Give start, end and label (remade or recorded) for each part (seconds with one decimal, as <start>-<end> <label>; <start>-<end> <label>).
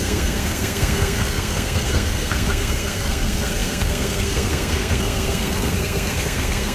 0.0-6.7 remade